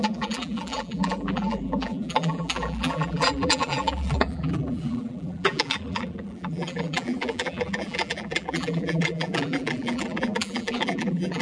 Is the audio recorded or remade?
remade